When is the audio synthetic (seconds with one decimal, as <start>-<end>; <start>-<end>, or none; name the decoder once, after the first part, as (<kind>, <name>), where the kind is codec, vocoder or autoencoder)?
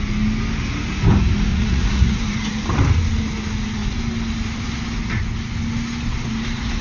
1.5-2.2 (vocoder, Vocos)